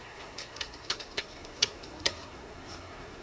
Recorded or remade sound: remade